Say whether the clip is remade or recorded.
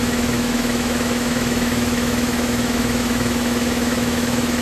remade